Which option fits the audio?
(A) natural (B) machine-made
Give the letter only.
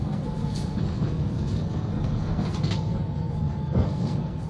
B